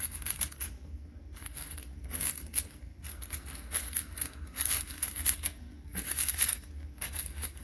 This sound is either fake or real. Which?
fake